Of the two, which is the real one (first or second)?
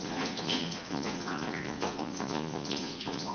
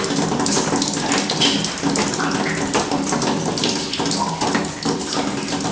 second